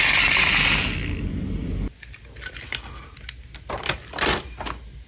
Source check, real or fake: real